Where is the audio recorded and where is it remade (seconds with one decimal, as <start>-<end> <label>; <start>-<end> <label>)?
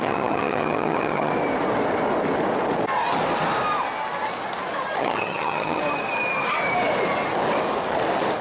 0.0-1.3 remade; 1.3-5.0 recorded; 5.0-5.8 remade; 5.8-8.4 recorded